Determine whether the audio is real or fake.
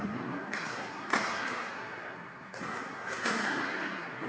fake